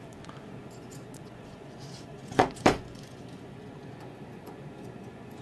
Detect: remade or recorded remade